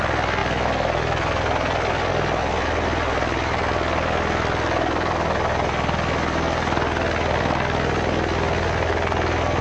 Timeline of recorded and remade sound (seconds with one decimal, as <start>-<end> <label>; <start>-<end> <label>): 0.0-9.6 recorded